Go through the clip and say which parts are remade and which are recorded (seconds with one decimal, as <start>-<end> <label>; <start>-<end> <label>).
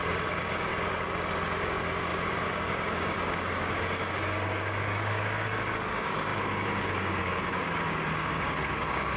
0.0-0.7 remade; 0.7-1.6 recorded; 1.6-9.2 remade